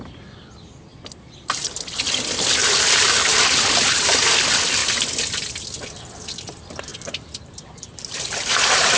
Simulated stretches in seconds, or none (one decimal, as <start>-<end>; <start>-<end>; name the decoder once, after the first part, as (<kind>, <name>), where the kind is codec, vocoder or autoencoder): 0.9-1.6 (vocoder, BigVGAN v2); 2.6-4.1; 6.9-9.0